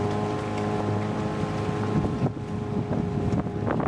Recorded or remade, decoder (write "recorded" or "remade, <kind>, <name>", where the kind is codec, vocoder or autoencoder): recorded